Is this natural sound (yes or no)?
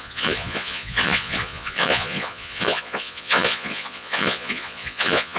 no